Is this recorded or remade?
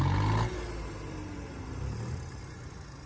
recorded